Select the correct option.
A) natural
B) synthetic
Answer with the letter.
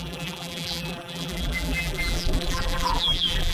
B